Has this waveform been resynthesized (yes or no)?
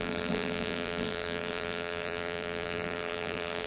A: yes